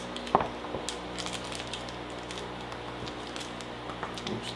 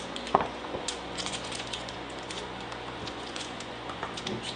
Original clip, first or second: first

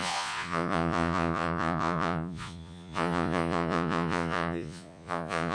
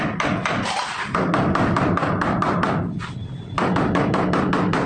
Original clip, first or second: second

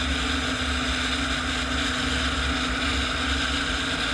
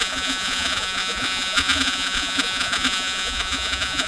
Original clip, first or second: first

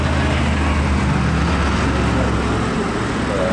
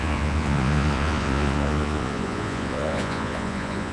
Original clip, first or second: first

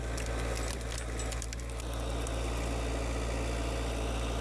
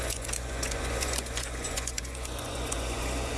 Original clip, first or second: first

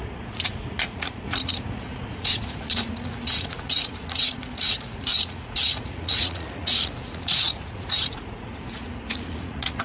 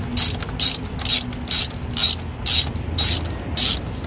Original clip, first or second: second